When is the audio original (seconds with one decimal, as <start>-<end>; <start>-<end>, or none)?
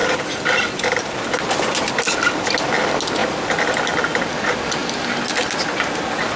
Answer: 0.0-3.2; 3.9-6.4